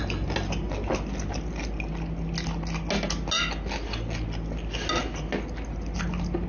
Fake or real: real